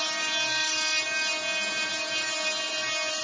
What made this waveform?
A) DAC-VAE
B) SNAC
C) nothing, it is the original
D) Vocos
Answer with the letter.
C